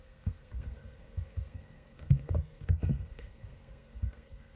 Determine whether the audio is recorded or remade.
remade